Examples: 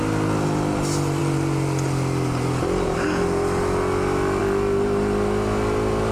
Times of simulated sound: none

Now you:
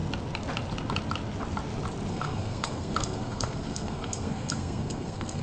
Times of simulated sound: 2.1-5.4 (codec, SNAC)

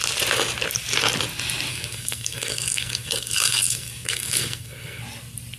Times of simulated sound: 1.7-5.0 (codec, SNAC)

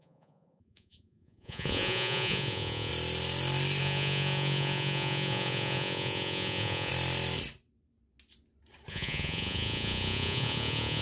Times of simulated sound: 0.0-2.9 (vocoder, Vocos); 3.8-6.9; 8.9-11.0

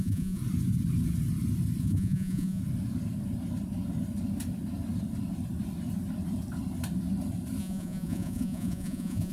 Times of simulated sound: 0.0-0.4 (vocoder, Vocos); 1.8-2.6; 7.6-9.3

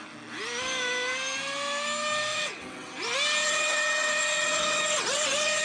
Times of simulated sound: 2.3-2.9 (vocoder, WaveNeXt); 3.4-5.6

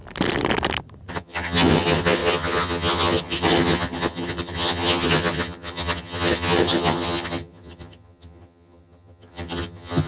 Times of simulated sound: 1.1-10.1 (vocoder, HiFi-GAN)

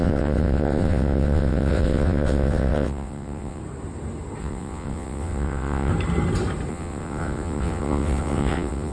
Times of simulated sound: 0.0-3.6 (vocoder, WaveNeXt); 4.4-5.9; 6.7-8.9